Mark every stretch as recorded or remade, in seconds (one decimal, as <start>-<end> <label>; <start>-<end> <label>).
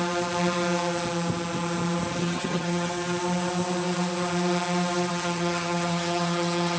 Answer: 0.0-2.2 recorded; 2.2-2.9 remade; 2.9-5.1 recorded; 5.1-6.8 remade